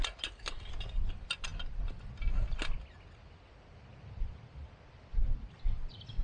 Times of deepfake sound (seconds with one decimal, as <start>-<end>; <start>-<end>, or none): none